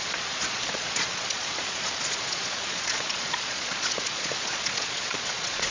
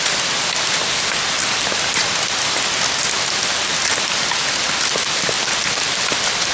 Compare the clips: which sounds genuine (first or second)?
second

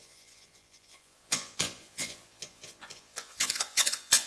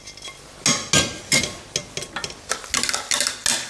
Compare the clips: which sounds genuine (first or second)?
second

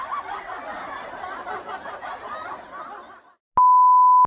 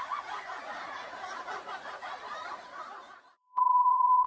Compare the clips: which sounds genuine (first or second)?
first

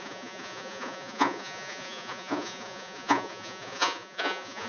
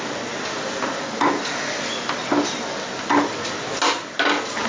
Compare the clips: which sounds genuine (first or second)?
second